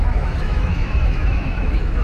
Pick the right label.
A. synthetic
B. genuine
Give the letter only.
A